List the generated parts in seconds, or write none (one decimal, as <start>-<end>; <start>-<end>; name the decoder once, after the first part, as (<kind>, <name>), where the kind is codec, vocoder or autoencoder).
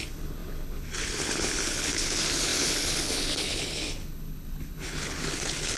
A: 0.0-5.8 (codec, HILCodec)